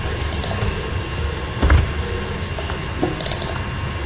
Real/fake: real